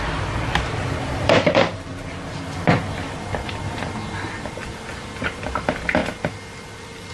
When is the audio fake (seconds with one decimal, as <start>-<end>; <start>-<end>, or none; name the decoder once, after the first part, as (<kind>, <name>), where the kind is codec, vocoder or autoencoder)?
none